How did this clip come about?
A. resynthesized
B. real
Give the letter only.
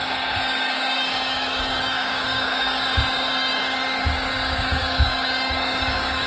A